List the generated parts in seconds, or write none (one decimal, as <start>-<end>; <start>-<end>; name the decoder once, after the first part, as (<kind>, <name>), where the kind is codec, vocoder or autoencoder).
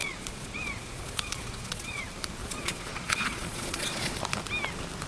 0.0-2.0 (vocoder, Vocos); 2.4-4.2